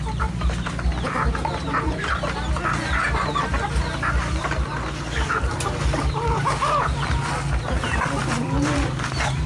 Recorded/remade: recorded